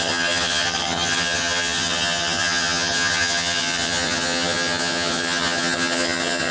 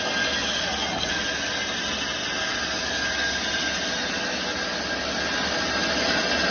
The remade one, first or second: first